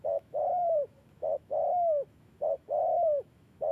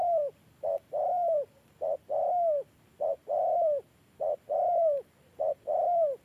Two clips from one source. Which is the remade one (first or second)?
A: first